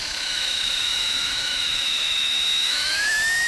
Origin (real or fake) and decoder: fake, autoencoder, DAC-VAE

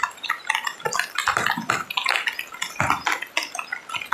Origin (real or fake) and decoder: real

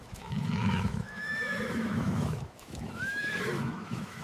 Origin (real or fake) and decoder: fake, autoencoder, DAC-VAE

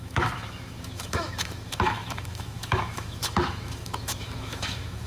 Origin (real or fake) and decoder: fake, autoencoder, DAC-VAE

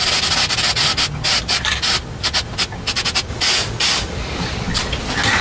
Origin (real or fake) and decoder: real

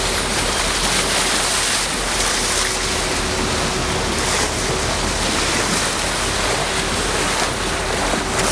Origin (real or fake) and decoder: real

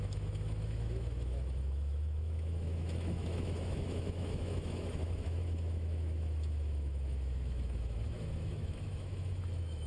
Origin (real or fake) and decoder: fake, autoencoder, DAC-VAE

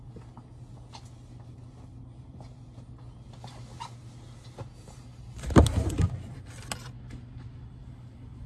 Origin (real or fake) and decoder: real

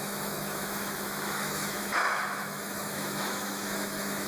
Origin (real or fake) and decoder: fake, autoencoder, DAC-VAE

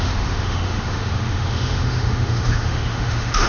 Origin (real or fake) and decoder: fake, autoencoder, DAC-VAE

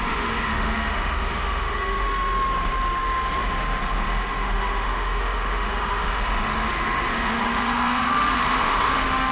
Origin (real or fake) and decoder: fake, autoencoder, DAC-VAE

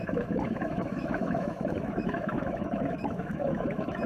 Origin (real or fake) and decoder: fake, autoencoder, DAC-VAE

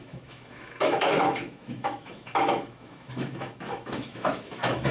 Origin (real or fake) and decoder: fake, autoencoder, DAC-VAE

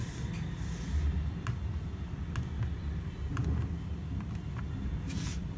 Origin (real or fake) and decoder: real